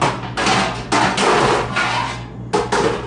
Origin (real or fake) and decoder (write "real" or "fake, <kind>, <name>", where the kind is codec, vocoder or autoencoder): real